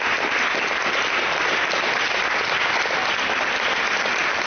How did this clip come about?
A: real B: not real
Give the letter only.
A